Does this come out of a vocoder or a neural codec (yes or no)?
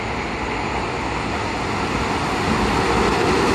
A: no